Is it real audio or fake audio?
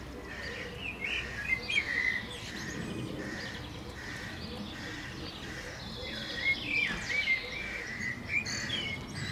real